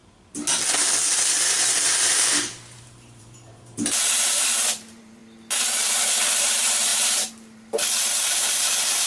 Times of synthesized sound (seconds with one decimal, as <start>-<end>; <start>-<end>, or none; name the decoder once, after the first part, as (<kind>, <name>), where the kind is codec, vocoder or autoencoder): 2.1-5.2 (vocoder, BigVGAN v2); 5.9-9.1